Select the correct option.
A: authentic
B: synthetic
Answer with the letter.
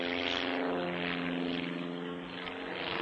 A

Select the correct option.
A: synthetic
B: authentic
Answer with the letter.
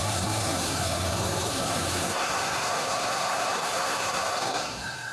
A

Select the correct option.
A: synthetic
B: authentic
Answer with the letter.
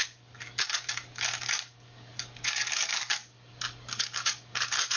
A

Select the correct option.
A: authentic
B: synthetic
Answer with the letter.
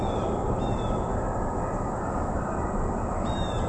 A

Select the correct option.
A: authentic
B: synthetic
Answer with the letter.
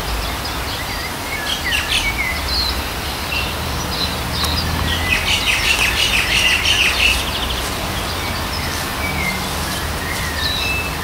A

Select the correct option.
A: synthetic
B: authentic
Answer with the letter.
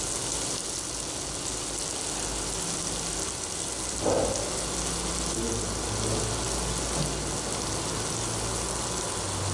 B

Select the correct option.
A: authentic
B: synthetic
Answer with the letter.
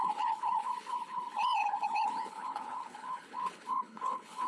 B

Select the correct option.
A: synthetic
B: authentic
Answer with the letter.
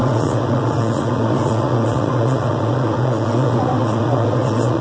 A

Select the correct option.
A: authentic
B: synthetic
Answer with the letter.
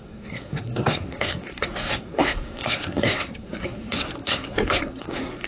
B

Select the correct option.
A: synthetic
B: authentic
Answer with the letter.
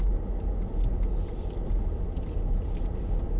B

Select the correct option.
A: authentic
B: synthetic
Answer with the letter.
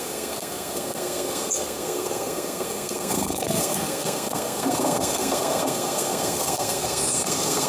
B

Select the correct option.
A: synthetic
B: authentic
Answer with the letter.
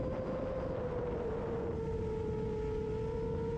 B